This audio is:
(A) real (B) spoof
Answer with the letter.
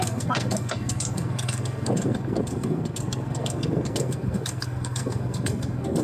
B